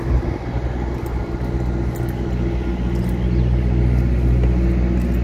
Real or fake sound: real